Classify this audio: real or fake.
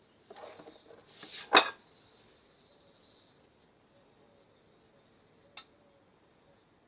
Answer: real